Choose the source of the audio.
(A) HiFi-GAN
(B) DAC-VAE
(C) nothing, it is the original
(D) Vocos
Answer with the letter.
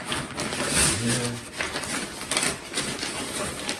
C